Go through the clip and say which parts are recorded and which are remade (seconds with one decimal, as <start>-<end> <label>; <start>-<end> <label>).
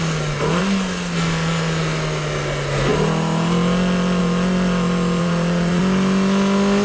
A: 0.0-5.2 recorded; 5.2-5.8 remade; 5.8-6.8 recorded